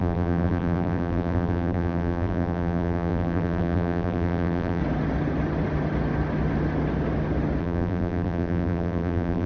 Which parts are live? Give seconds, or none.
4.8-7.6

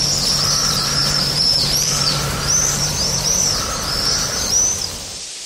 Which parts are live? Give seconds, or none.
0.0-1.0; 4.3-5.5

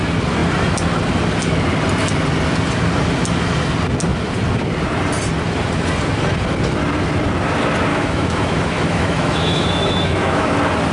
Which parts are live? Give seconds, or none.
0.0-7.9; 10.5-10.9

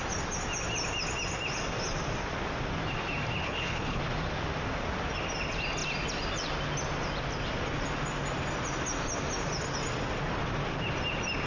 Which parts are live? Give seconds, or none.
0.0-3.4; 4.0-11.5

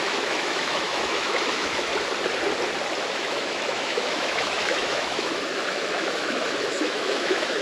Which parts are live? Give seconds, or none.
1.9-3.1

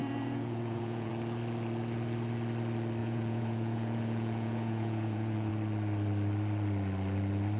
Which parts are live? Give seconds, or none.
1.1-3.0; 5.5-7.6

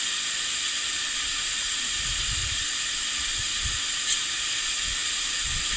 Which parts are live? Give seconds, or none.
0.0-2.4; 3.0-5.0